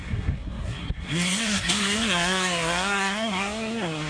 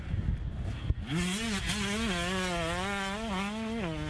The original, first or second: second